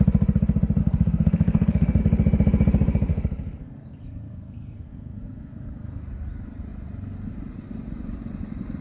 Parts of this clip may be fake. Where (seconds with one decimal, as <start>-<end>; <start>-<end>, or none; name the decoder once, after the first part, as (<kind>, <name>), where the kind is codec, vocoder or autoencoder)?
0.8-2.0 (codec, SNAC); 3.1-6.0